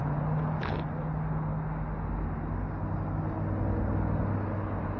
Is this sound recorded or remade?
recorded